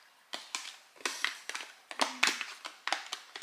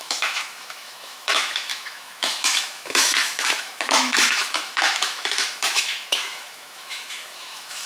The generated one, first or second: second